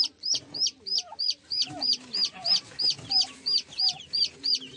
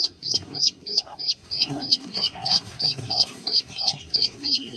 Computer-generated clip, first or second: second